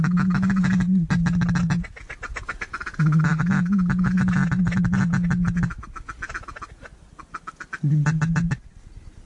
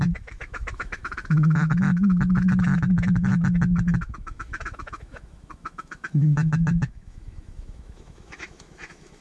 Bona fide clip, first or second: first